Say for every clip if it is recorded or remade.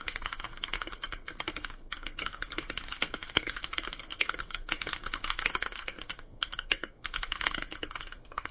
remade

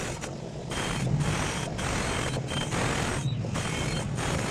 recorded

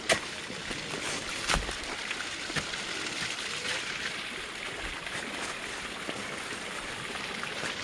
recorded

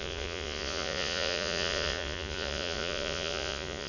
remade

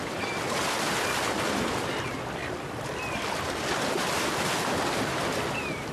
recorded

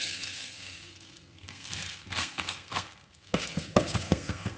remade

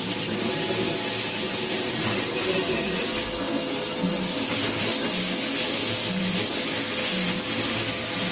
recorded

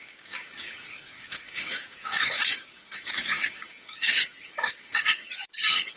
remade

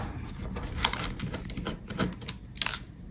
recorded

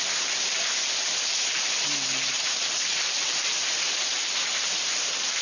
remade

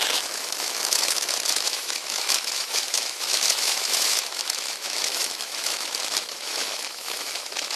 remade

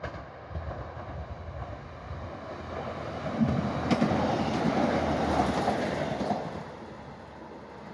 recorded